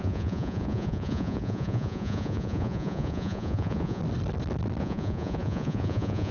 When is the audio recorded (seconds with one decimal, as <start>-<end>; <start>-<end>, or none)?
4.0-4.8